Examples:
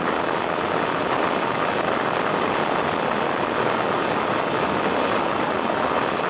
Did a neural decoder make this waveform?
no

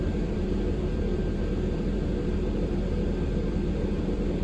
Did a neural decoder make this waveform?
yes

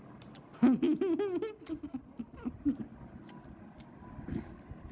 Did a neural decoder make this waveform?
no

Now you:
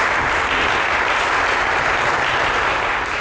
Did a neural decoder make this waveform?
no